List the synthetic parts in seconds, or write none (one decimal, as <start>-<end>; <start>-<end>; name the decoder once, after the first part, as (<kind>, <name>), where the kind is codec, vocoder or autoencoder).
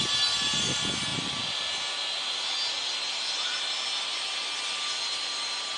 none